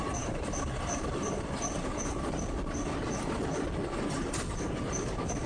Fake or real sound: real